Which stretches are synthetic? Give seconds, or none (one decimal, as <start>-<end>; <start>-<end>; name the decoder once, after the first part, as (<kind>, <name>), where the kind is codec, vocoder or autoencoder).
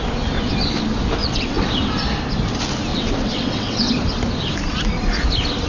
1.2-1.9 (vocoder, WaveNeXt); 2.9-3.9